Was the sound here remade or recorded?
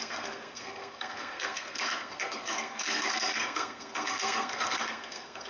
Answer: remade